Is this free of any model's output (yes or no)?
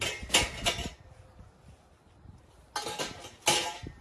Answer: yes